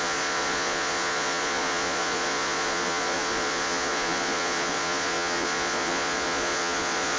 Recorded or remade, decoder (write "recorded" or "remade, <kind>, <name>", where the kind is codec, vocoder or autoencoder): remade, vocoder, Vocos